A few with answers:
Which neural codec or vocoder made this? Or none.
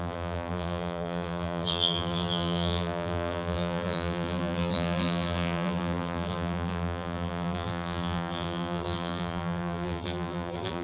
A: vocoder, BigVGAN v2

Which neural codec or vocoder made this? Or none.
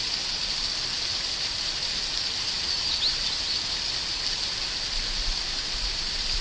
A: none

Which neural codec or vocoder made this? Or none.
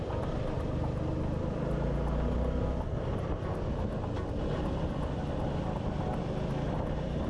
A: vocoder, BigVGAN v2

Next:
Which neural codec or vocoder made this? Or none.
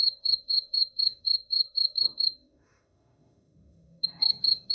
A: autoencoder, DAC-VAE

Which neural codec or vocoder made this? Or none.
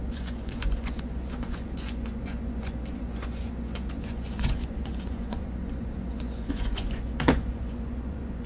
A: vocoder, Vocos